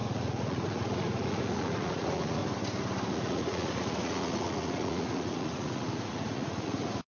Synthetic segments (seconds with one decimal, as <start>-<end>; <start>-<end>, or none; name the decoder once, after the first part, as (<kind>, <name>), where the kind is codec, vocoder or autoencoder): 0.0-2.4 (vocoder, Vocos); 3.1-7.2

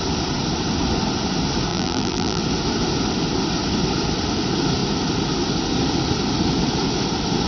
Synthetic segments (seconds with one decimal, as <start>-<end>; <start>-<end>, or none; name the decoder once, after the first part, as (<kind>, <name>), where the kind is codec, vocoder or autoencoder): 1.7-2.4 (vocoder, BigVGAN v2)

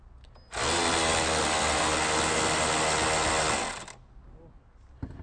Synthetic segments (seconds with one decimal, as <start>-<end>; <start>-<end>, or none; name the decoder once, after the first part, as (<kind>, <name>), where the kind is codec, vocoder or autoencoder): none

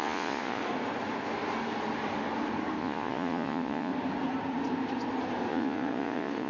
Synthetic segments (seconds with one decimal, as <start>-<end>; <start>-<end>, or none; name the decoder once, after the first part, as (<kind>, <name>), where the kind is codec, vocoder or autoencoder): 0.0-0.6 (vocoder, Vocos); 2.8-3.9; 5.5-6.5

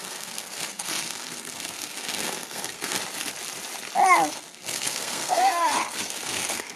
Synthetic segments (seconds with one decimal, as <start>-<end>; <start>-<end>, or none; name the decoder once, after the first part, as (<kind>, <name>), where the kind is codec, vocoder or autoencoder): 0.0-3.0 (codec, SNAC); 4.3-6.8

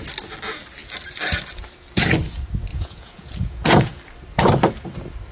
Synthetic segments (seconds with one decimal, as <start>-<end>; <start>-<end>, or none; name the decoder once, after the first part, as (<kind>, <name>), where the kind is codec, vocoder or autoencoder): 2.7-4.0 (vocoder, Vocos)